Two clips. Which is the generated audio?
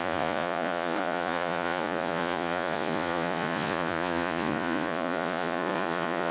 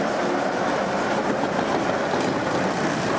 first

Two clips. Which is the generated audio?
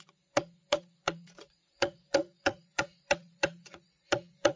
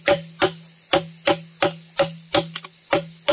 first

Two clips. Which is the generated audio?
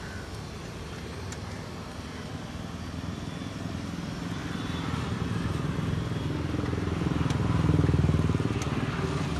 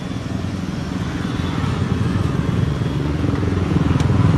second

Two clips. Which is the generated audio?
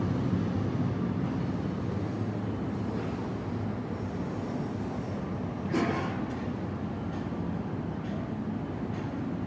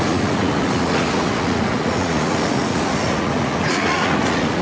second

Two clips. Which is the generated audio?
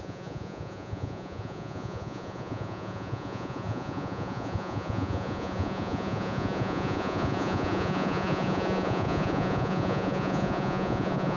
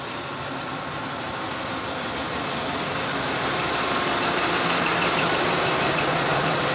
first